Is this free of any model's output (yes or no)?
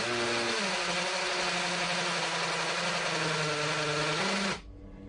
yes